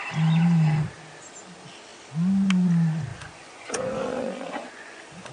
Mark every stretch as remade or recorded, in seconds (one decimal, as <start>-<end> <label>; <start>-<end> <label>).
0.0-3.1 recorded; 3.1-5.3 remade